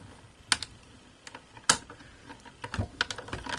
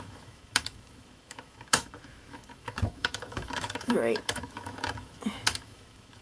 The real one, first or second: first